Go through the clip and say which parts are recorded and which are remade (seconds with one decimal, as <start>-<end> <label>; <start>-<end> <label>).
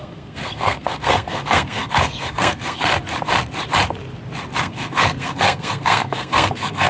0.0-2.9 remade; 2.9-4.6 recorded; 4.6-6.9 remade